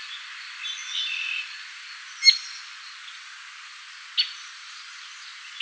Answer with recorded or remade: recorded